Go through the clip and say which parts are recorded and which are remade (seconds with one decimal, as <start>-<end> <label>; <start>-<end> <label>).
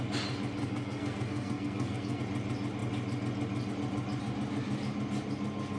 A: 0.0-0.6 recorded; 0.6-2.2 remade; 2.2-5.8 recorded